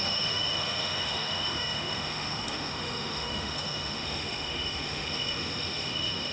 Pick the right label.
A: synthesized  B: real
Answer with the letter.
A